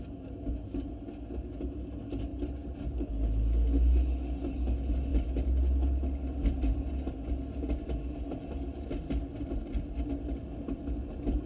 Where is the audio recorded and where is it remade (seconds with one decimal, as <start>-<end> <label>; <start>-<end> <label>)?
0.0-11.5 recorded